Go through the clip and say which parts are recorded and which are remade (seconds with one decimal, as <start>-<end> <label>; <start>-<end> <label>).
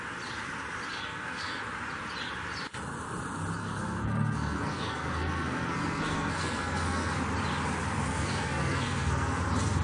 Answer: 0.0-0.9 recorded; 0.9-1.6 remade; 1.6-3.6 recorded; 3.6-7.2 remade; 7.2-8.1 recorded; 8.1-9.4 remade; 9.4-9.8 recorded